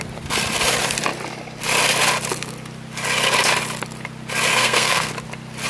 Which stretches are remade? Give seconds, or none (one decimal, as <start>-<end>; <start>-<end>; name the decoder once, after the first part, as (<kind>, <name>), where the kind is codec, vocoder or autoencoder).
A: 4.5-5.1 (codec, SNAC)